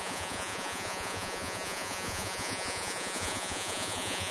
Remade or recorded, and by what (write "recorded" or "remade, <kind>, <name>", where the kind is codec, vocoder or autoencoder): remade, vocoder, Vocos